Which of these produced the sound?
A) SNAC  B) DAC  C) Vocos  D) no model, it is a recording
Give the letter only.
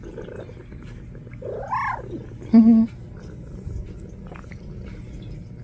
D